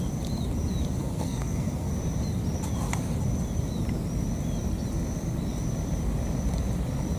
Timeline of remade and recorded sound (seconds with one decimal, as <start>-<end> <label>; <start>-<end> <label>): 0.0-1.0 recorded; 1.0-1.9 remade; 1.9-7.2 recorded

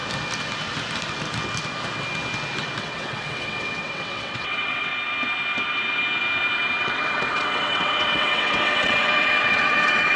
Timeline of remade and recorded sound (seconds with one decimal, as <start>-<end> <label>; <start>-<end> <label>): 0.0-2.8 recorded; 2.8-4.9 remade; 4.9-6.8 recorded; 6.8-10.2 remade

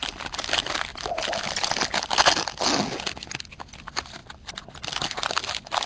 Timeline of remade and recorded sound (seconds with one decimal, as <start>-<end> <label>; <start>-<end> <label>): 0.0-5.9 recorded

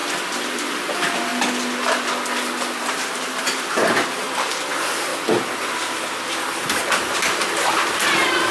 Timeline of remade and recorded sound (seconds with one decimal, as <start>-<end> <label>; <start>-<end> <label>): 0.0-0.5 recorded; 0.5-1.3 remade; 1.3-2.8 recorded; 2.8-5.1 remade; 5.1-6.8 recorded; 6.8-8.5 remade

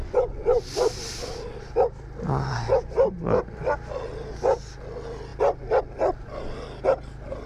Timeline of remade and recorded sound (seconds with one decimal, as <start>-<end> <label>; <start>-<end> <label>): 0.0-7.5 recorded

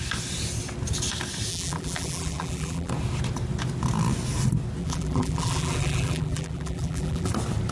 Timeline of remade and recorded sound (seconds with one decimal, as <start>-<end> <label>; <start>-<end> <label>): 0.0-1.5 recorded; 1.5-2.9 remade; 2.9-4.8 recorded; 4.8-7.3 remade; 7.3-7.7 recorded

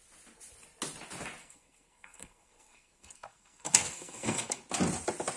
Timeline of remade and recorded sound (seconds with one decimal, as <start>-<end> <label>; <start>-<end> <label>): 0.0-1.4 recorded; 1.4-4.6 remade; 4.6-5.4 recorded

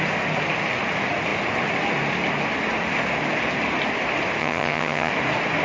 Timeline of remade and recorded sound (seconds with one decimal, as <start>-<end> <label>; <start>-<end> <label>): 0.0-4.4 recorded; 4.4-5.1 remade; 5.1-5.6 recorded